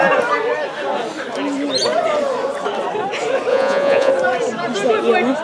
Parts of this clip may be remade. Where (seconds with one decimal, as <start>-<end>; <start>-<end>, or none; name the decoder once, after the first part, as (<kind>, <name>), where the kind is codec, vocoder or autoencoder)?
3.5-4.1 (vocoder, Vocos)